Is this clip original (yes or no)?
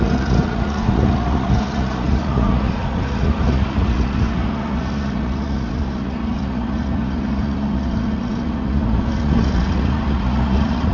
no